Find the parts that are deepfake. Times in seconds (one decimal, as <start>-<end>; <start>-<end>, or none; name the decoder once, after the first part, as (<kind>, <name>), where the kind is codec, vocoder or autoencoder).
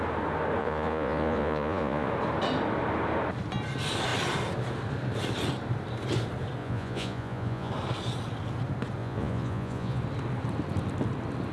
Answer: 0.6-2.1 (vocoder, Vocos); 6.6-7.7; 9.0-10.0